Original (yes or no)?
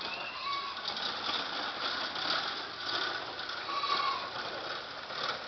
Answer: yes